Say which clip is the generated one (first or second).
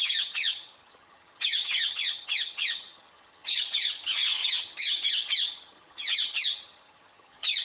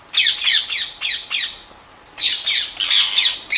first